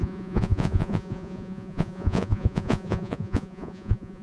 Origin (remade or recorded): remade